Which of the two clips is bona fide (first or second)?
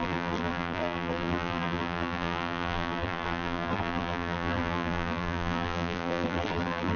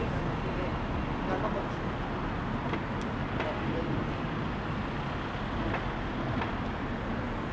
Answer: second